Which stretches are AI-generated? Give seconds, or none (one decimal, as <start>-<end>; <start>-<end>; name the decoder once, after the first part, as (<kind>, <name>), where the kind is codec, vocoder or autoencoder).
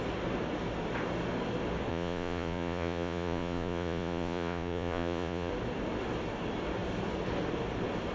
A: 1.9-5.5 (vocoder, Vocos)